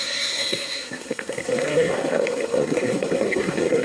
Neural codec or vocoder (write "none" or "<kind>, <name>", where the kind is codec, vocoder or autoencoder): codec, SNAC